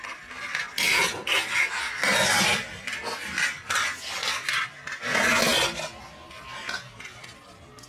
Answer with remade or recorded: recorded